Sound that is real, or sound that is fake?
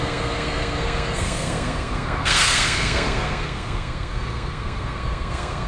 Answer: fake